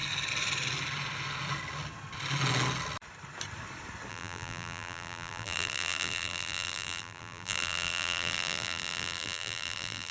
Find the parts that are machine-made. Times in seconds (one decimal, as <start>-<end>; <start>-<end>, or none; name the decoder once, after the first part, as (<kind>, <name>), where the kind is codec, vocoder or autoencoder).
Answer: 4.1-10.1 (vocoder, BigVGAN v2)